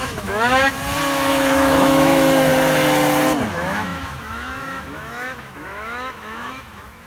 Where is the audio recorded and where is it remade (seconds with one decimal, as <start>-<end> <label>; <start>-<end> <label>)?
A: 0.0-0.7 remade; 0.7-1.3 recorded; 1.3-2.5 remade; 2.5-3.5 recorded; 3.5-7.1 remade